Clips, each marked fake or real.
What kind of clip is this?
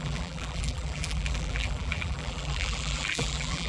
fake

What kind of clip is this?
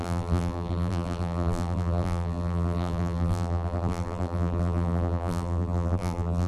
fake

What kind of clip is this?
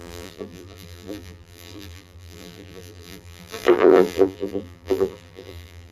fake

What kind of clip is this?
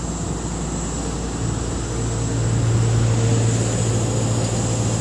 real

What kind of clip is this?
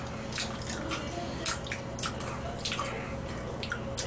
real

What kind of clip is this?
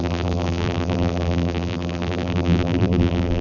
fake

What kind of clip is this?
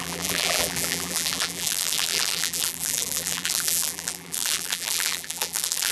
fake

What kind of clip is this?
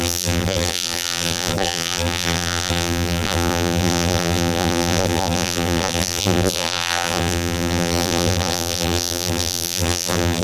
fake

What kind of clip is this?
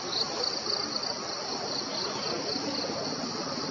fake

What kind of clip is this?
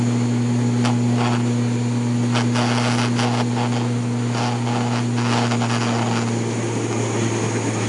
real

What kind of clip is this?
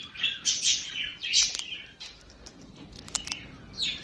fake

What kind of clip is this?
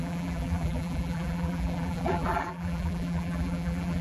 fake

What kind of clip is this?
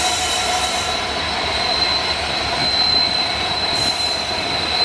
fake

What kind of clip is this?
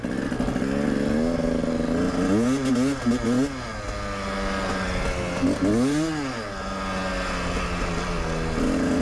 real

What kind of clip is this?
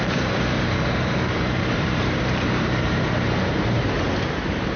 fake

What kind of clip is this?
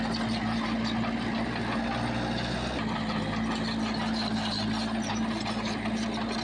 real